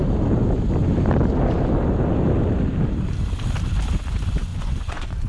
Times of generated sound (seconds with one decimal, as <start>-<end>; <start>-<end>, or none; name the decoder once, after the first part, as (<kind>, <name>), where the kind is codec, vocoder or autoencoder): 4.5-5.3 (vocoder, Vocos)